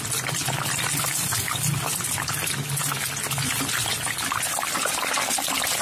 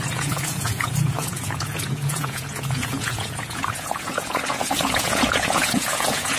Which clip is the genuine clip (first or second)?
first